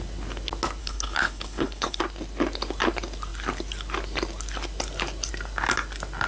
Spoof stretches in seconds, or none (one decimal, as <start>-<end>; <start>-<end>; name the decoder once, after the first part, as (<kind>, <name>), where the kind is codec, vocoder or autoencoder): 0.8-2.0 (codec, HILCodec)